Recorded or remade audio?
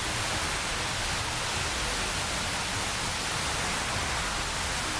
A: recorded